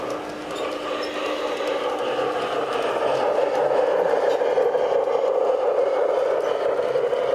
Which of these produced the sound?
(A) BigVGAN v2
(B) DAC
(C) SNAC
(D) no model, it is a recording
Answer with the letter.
D